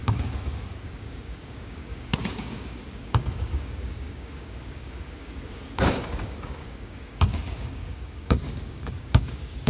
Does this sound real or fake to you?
fake